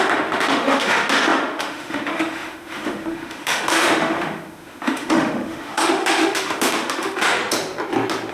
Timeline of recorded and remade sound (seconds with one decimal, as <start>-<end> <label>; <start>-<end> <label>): 0.0-7.4 remade; 7.4-8.3 recorded